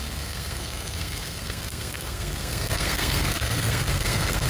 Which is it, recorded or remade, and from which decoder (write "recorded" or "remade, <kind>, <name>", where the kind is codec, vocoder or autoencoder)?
remade, codec, SNAC